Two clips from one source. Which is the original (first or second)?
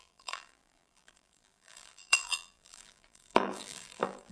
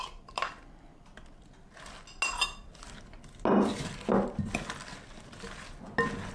second